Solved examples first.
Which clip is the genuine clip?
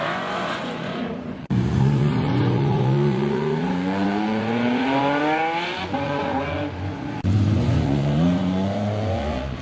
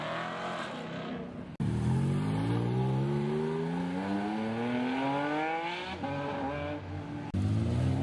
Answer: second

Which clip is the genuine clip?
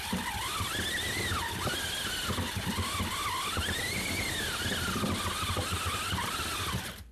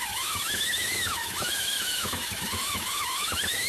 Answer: first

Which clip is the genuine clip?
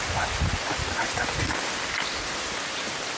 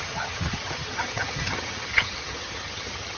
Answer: first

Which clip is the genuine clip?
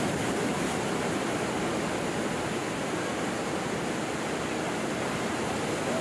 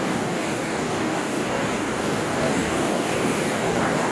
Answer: first